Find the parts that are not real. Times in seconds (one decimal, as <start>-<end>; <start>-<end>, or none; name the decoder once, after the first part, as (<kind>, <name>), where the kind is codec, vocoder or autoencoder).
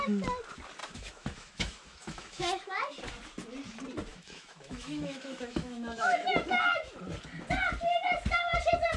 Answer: 0.8-2.7 (autoencoder, DAC-VAE); 4.1-6.9